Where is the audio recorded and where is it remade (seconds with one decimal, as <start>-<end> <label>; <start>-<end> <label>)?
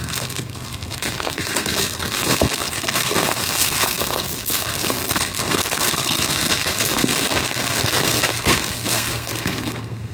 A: 0.0-10.1 remade